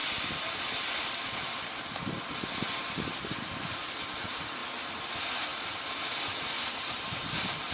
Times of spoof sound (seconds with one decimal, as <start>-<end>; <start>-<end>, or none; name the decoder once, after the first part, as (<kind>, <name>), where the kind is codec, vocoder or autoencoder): 0.0-4.6 (vocoder, BigVGAN v2); 5.1-7.7